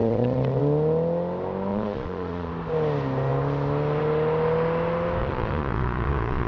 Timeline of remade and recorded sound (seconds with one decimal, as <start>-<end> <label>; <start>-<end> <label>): 0.0-0.6 remade; 0.6-1.7 recorded; 1.7-2.5 remade; 2.5-5.2 recorded; 5.2-6.5 remade